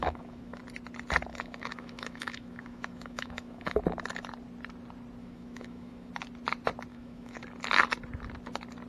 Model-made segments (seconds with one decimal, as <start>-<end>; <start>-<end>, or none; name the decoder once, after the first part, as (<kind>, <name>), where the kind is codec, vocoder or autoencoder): 0.0-0.6 (autoencoder, DAC-VAE); 1.3-3.8; 5.2-6.1; 6.9-7.4